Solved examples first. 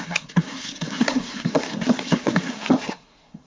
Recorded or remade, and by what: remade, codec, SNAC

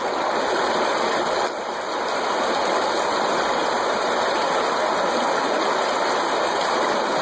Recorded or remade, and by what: recorded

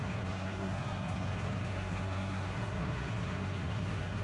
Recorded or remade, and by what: remade, codec, SNAC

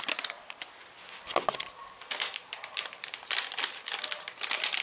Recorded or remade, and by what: recorded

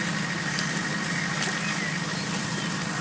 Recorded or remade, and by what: recorded